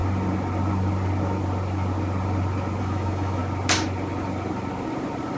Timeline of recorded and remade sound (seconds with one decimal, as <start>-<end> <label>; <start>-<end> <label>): 0.0-2.8 recorded; 2.8-3.4 remade; 3.4-5.4 recorded